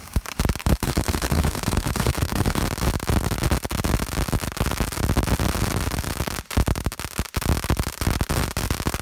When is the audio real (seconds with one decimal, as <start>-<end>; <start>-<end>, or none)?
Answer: 0.0-0.6; 2.6-9.0